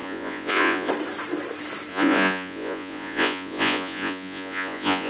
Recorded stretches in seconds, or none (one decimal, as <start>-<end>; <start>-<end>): 0.9-1.9